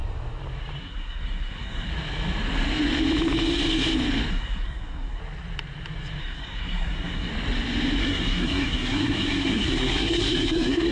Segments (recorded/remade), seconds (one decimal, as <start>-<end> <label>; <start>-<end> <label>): 0.0-0.8 recorded; 0.8-1.9 remade; 1.9-4.3 recorded; 4.3-5.2 remade; 5.2-6.2 recorded; 6.2-7.3 remade; 7.3-8.0 recorded; 8.0-10.9 remade